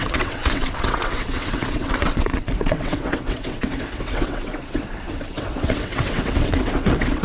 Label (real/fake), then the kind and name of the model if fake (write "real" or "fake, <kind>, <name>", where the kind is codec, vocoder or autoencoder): fake, vocoder, WaveNeXt